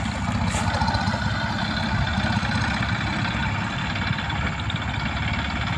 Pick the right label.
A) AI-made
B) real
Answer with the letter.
B